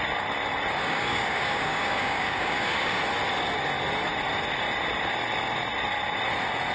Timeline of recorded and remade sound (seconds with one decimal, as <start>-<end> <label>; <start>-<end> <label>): 0.0-0.8 recorded; 0.8-3.0 remade; 3.0-6.7 recorded